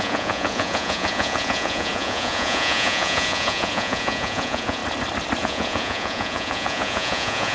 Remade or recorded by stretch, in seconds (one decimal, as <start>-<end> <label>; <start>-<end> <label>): 0.0-4.8 remade; 4.8-5.4 recorded; 5.4-7.5 remade